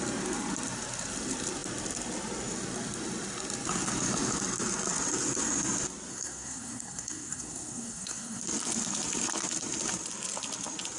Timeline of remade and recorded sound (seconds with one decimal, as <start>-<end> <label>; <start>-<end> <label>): 0.0-6.1 recorded; 6.1-8.4 remade; 8.4-11.0 recorded